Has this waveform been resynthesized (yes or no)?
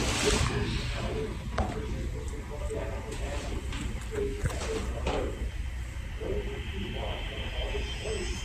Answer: no